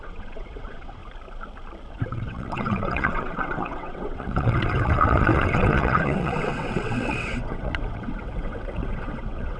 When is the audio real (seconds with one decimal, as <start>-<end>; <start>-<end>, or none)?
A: 1.0-1.9